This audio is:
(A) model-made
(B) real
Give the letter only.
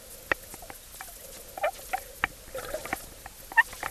B